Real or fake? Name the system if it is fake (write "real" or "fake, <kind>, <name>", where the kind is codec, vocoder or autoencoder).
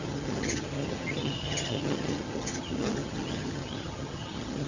fake, vocoder, HiFi-GAN